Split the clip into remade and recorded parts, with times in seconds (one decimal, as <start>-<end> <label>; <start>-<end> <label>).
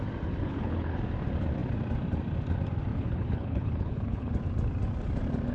0.0-0.4 recorded; 0.4-1.0 remade; 1.0-2.9 recorded; 2.9-4.3 remade; 4.3-5.5 recorded